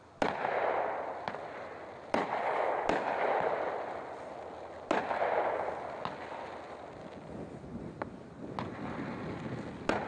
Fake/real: real